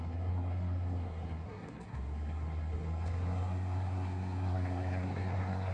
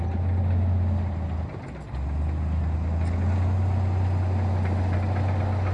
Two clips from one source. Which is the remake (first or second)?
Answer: first